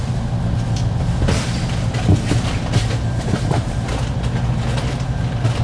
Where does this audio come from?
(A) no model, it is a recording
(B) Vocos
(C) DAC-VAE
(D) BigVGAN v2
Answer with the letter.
A